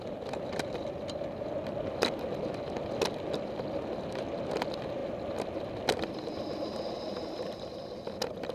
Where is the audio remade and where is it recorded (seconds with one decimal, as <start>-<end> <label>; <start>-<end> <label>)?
0.0-8.5 recorded